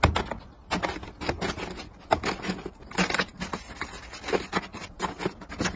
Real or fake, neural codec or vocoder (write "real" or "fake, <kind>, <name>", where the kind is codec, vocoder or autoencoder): real